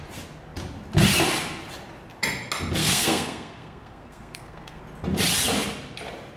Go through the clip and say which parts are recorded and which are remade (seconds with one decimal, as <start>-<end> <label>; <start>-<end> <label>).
0.0-2.8 recorded; 2.8-4.8 remade; 4.8-6.4 recorded